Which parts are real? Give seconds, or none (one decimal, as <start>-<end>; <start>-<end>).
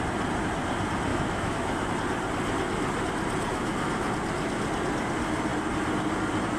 0.0-1.1; 1.9-3.5; 4.1-6.6